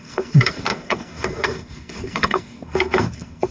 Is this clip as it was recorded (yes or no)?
no